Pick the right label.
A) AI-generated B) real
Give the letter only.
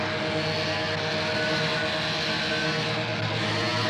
B